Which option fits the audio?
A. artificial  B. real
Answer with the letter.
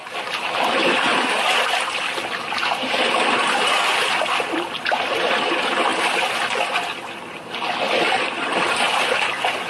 B